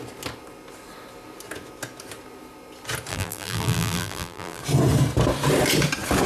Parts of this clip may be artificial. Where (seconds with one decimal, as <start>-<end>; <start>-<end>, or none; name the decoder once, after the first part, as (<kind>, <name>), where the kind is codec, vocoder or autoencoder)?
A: 3.1-4.6 (vocoder, BigVGAN v2)